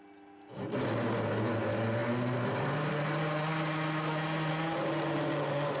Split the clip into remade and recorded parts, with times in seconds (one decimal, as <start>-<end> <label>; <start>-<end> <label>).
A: 0.0-5.8 recorded